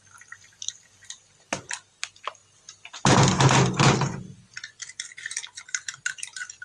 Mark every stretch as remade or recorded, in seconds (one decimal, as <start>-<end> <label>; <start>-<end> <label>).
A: 0.0-6.6 recorded